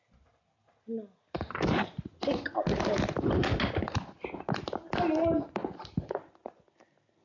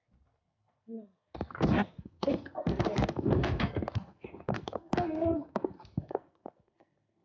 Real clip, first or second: first